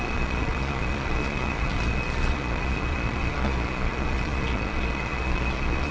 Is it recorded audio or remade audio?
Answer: remade